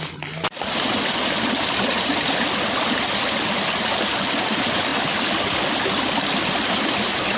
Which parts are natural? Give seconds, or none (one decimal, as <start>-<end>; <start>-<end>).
0.0-7.4